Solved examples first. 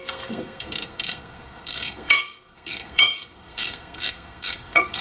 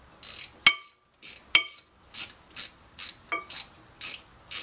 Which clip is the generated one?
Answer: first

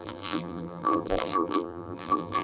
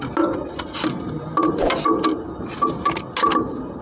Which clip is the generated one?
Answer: first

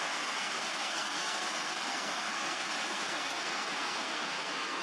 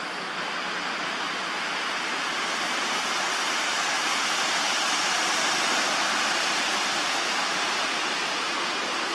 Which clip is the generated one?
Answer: first